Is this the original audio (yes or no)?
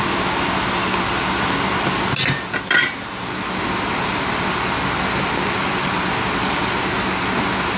yes